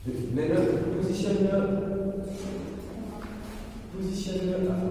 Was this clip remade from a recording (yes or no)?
no